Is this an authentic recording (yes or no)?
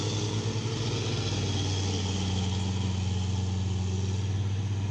yes